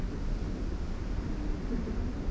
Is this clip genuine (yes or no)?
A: yes